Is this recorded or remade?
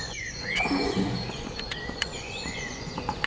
remade